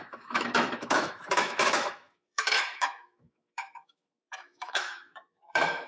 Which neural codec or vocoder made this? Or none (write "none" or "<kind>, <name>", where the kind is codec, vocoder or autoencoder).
autoencoder, DAC-VAE